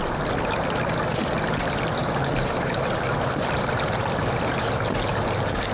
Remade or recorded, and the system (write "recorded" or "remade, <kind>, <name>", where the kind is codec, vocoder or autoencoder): recorded